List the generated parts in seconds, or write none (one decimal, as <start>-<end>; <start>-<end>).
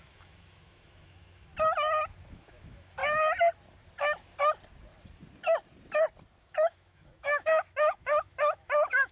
0.0-1.5; 2.3-3.0; 6.4-9.1